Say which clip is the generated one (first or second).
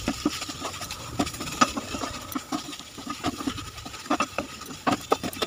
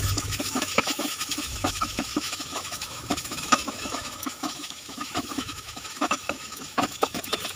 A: second